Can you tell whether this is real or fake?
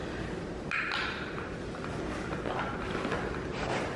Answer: real